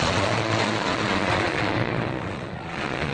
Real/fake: fake